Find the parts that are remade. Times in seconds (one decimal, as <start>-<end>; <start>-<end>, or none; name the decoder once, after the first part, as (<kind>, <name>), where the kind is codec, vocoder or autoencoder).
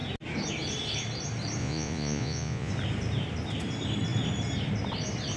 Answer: 1.6-2.7 (vocoder, Vocos)